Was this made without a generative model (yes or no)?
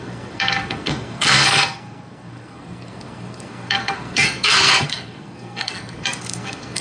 no